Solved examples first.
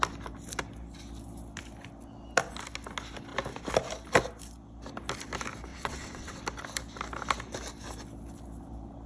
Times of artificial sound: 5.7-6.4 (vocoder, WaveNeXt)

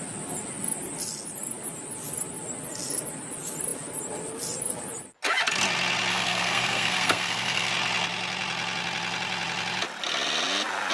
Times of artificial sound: 6.1-7.7 (codec, SNAC)

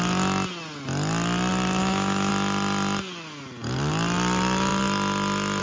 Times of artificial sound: 1.8-2.3 (autoencoder, DAC-VAE)

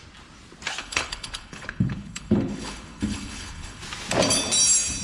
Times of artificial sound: 0.8-3.8 (codec, HILCodec)

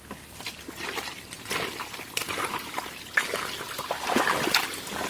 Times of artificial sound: 2.2-2.8 (vocoder, BigVGAN v2)

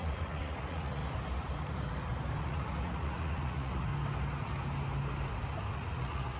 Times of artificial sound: 0.0-1.0 (vocoder, Vocos); 2.4-3.9; 5.7-6.4

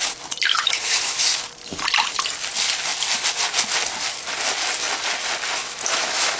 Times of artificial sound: 0.5-1.5 (autoencoder, DAC-VAE); 5.6-6.4

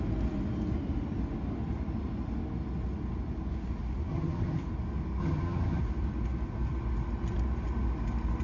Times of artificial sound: 4.1-4.6 (vocoder, HiFi-GAN); 5.2-5.8